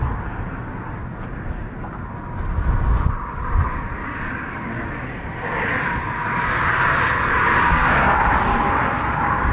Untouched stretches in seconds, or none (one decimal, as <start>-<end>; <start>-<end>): 0.0-7.7; 8.2-9.5